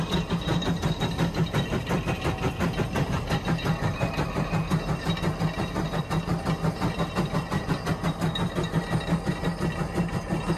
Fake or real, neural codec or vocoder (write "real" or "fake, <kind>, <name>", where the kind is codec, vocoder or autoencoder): real